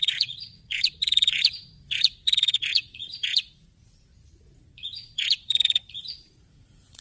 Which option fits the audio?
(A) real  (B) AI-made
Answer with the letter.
B